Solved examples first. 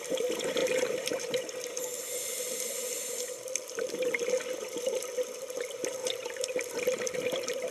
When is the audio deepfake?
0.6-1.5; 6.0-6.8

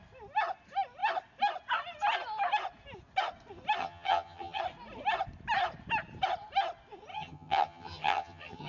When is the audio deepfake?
3.8-4.6; 7.1-8.7

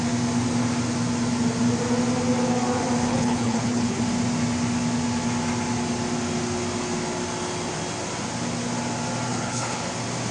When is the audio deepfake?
3.1-4.0; 9.3-9.8